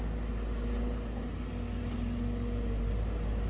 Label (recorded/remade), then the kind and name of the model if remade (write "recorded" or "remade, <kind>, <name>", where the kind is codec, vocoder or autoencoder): recorded